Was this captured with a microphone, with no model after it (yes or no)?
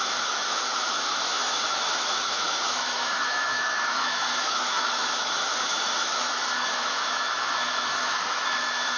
no